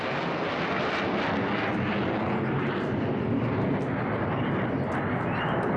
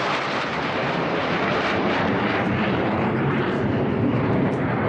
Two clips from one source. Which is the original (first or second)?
first